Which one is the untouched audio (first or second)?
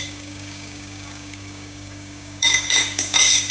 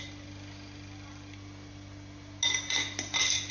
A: second